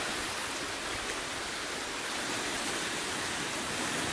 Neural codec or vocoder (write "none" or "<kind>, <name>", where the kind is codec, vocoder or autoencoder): none